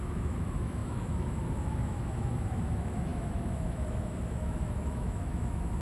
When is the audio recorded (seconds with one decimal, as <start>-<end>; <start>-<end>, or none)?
none